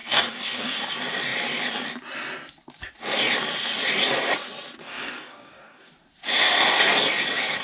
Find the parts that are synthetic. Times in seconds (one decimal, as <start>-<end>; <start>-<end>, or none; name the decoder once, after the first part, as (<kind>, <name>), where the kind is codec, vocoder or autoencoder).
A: 0.0-0.9 (codec, DAC); 4.8-5.9